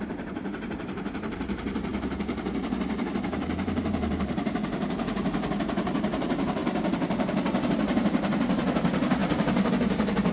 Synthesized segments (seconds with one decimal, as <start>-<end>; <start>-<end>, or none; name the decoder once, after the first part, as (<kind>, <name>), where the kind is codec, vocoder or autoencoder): 0.0-6.6 (vocoder, BigVGAN v2); 7.7-10.3